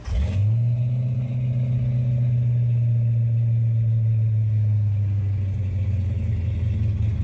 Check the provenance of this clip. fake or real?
real